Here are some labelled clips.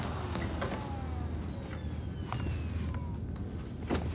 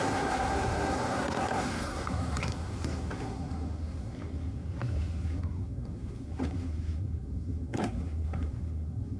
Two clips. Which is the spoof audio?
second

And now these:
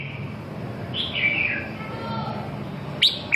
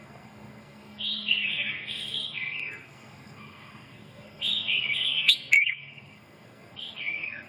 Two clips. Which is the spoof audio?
second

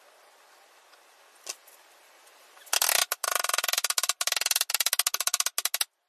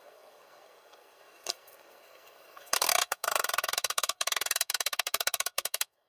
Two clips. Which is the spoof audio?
second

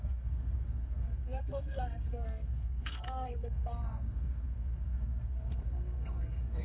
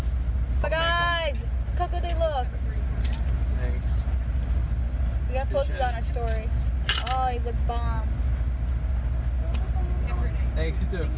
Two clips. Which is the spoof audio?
first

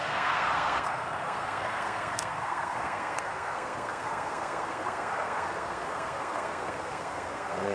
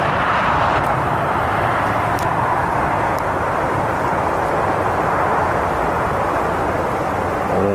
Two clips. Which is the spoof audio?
first